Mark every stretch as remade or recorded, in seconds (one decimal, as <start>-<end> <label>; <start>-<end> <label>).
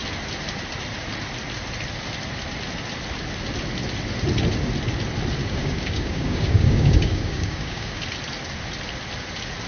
0.0-5.4 recorded; 5.4-8.0 remade; 8.0-9.7 recorded